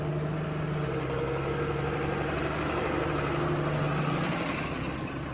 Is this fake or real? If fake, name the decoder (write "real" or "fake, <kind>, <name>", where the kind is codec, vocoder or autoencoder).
real